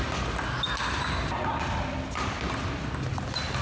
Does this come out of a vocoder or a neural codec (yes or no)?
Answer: no